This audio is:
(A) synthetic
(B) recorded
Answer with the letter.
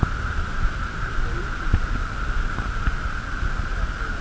B